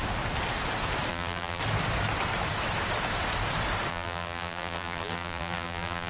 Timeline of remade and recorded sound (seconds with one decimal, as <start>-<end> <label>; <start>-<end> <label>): 0.0-1.1 recorded; 1.1-1.6 remade; 1.6-3.9 recorded; 3.9-6.1 remade